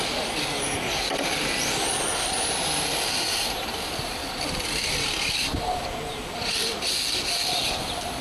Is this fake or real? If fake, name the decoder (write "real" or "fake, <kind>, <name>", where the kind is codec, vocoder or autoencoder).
real